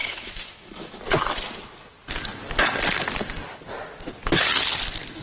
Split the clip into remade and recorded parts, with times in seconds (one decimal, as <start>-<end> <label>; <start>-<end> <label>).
0.0-1.0 remade; 1.0-5.2 recorded